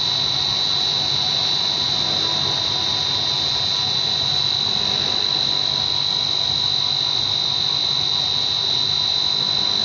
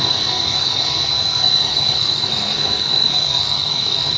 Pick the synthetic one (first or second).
second